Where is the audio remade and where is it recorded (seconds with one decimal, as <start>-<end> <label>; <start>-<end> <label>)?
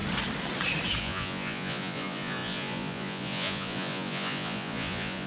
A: 0.0-1.0 recorded; 1.0-5.3 remade